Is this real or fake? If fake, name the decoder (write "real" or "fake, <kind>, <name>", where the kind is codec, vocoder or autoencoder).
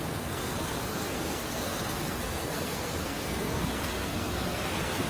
fake, codec, SNAC